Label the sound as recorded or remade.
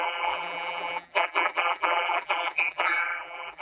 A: remade